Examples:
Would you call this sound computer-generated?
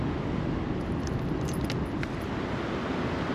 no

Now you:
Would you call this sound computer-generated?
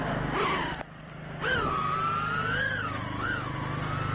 yes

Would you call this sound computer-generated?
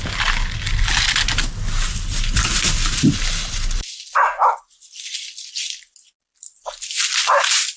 no